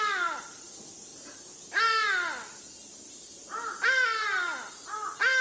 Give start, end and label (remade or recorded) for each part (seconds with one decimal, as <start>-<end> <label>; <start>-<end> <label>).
0.0-5.4 recorded